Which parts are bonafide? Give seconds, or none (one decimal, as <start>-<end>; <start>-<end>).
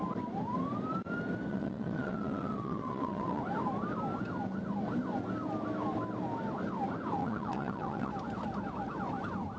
0.0-1.5; 3.4-7.2; 8.1-9.6